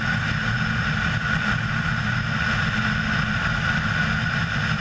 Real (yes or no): yes